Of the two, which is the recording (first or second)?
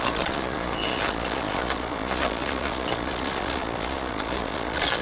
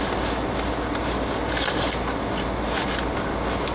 second